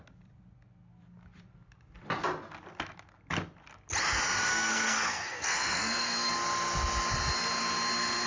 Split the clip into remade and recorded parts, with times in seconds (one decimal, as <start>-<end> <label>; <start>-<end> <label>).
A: 0.0-4.5 recorded; 4.5-6.3 remade; 6.3-8.3 recorded